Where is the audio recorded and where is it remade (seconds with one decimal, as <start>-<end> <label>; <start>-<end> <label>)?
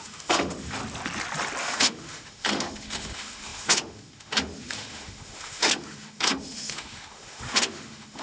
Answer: 0.0-0.8 remade; 0.8-1.6 recorded; 1.6-8.2 remade